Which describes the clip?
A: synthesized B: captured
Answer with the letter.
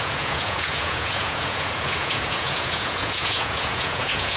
A